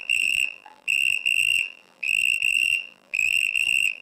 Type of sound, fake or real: fake